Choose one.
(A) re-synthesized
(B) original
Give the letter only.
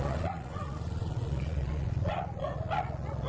A